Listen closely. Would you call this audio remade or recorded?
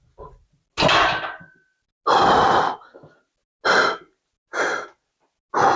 recorded